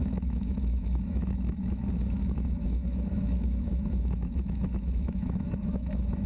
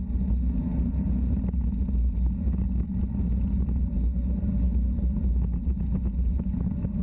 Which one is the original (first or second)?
second